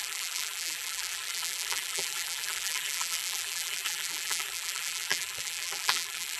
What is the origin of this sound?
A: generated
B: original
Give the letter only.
A